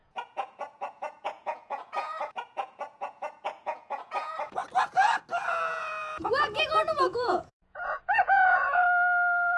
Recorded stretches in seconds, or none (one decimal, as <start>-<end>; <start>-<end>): 4.6-5.5; 8.8-9.6